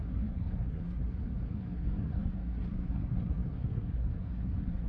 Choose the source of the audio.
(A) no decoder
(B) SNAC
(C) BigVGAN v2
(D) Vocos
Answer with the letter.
B